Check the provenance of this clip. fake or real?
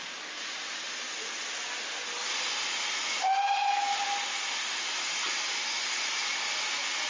real